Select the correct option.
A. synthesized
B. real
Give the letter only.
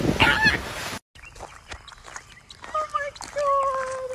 B